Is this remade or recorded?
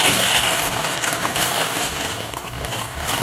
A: remade